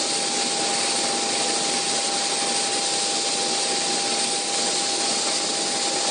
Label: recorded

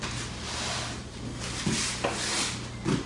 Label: recorded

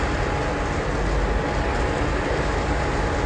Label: recorded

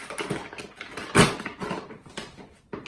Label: recorded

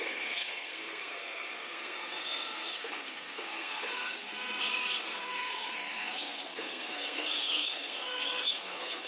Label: remade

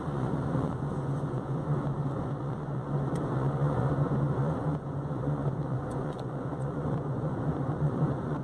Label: remade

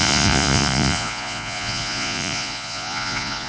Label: remade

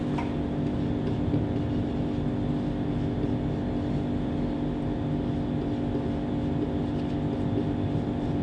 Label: recorded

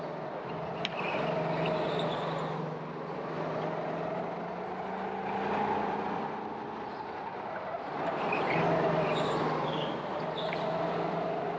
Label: recorded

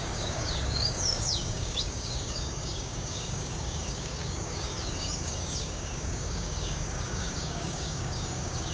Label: remade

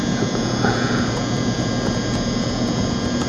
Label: remade